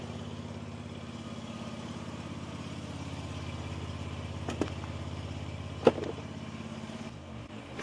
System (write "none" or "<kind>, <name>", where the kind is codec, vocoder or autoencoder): none